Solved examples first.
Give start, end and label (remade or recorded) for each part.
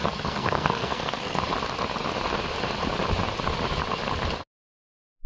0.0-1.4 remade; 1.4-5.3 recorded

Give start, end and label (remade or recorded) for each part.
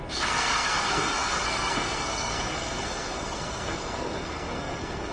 0.0-5.1 remade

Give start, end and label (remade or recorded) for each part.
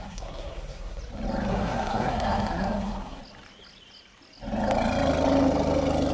0.0-1.0 remade; 1.0-1.5 recorded; 1.5-3.2 remade; 3.2-6.1 recorded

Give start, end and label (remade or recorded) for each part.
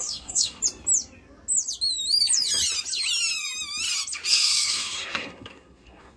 0.0-0.6 remade; 0.6-4.3 recorded; 4.3-6.2 remade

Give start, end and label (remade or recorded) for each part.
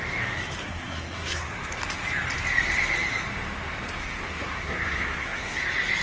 0.0-0.6 recorded; 0.6-1.8 remade; 1.8-4.0 recorded; 4.0-5.6 remade; 5.6-6.0 recorded